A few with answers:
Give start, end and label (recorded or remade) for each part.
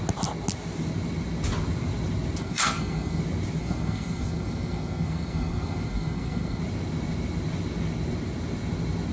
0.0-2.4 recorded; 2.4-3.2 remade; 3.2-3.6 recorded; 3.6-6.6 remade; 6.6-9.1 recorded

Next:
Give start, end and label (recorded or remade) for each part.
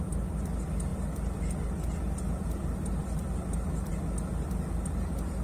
0.0-5.4 recorded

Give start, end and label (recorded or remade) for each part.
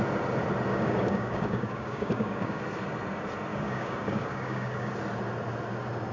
0.0-0.7 recorded; 0.7-2.6 remade; 2.6-3.5 recorded; 3.5-4.9 remade; 4.9-6.1 recorded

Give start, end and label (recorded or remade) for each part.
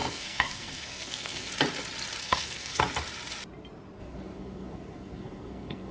0.0-1.5 remade; 1.5-2.2 recorded; 2.2-2.8 remade; 2.8-4.0 recorded; 4.0-5.9 remade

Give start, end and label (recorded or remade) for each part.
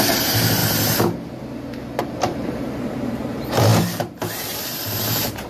0.0-0.6 remade; 0.6-2.0 recorded; 2.0-5.5 remade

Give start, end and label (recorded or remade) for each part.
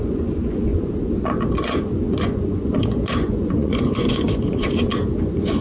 0.0-5.6 remade